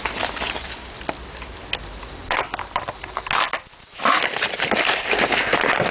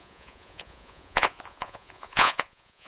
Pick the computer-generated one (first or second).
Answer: second